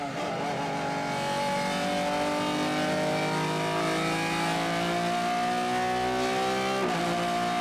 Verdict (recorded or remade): recorded